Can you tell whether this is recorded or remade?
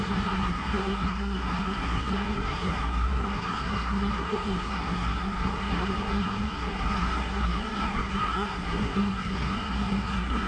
remade